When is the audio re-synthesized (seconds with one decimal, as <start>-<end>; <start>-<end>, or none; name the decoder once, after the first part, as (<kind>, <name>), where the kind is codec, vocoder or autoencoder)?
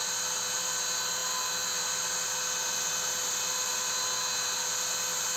none